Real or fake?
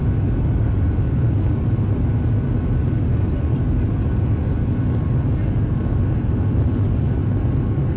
real